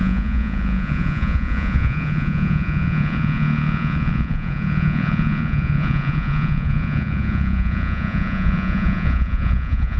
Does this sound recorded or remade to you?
remade